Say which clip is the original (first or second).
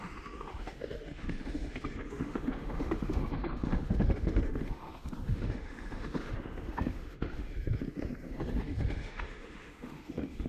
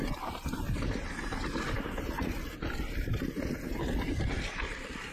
second